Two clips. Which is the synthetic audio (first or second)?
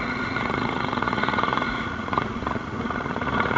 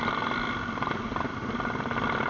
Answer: first